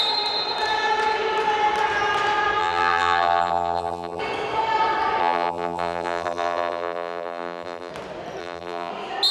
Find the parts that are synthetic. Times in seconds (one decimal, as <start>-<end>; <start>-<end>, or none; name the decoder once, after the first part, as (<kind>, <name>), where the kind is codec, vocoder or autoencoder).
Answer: 2.6-4.2 (vocoder, BigVGAN v2); 5.2-7.9; 8.4-8.9